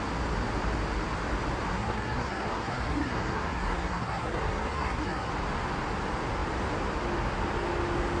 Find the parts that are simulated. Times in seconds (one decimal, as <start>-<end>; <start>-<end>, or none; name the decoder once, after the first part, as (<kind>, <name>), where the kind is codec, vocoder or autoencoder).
1.7-5.3 (codec, SNAC)